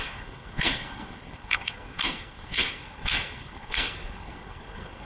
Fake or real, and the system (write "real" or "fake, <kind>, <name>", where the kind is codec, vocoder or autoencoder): fake, codec, SNAC